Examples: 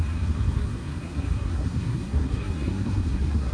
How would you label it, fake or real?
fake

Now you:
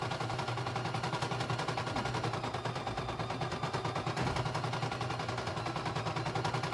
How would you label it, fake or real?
real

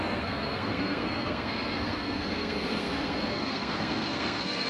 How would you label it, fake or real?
fake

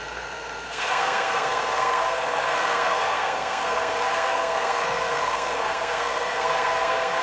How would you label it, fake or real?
fake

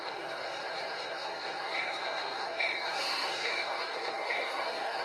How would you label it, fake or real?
fake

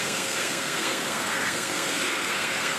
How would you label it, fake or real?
fake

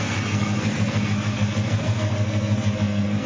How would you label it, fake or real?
fake